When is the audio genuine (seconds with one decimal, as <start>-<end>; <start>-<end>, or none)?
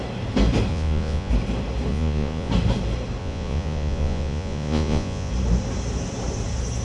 0.0-0.7; 1.3-1.9; 2.5-3.2; 5.3-6.8